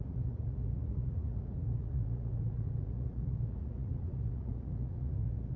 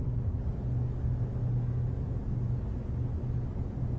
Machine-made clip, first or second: first